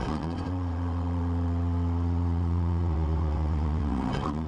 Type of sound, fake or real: fake